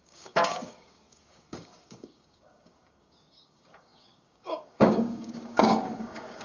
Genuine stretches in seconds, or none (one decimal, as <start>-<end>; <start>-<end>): none